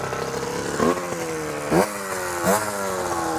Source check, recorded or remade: recorded